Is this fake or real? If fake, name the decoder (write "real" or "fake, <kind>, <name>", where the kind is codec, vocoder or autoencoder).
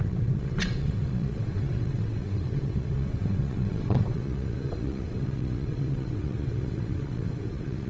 fake, vocoder, WaveNeXt